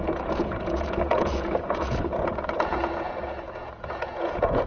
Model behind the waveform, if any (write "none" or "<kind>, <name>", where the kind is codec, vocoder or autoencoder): vocoder, Vocos